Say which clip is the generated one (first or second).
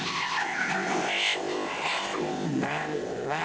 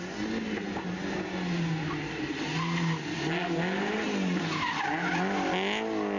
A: first